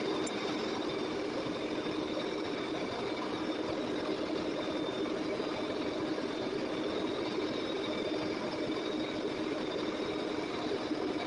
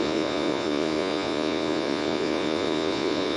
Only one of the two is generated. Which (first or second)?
second